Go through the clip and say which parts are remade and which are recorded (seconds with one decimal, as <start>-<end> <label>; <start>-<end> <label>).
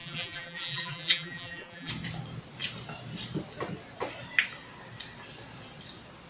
0.0-1.9 remade; 1.9-6.3 recorded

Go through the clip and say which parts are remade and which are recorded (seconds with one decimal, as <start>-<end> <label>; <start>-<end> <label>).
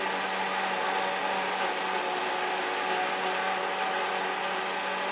0.0-5.1 recorded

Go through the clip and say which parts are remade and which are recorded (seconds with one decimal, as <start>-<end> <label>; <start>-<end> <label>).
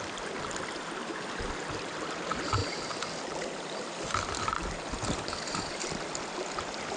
0.0-2.6 recorded; 2.6-7.0 remade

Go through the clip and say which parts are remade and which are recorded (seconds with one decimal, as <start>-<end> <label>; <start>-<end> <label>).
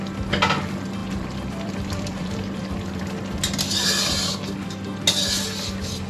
0.0-1.0 recorded; 1.0-3.2 remade; 3.2-6.1 recorded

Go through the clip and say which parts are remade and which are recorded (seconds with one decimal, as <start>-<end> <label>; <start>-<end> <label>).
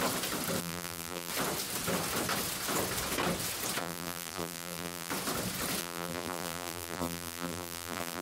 0.0-0.6 recorded; 0.6-1.3 remade; 1.3-3.8 recorded; 3.8-5.1 remade; 5.1-5.8 recorded; 5.8-8.2 remade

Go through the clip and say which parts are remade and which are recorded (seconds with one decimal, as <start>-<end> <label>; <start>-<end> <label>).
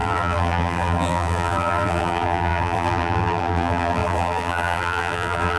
0.0-5.6 remade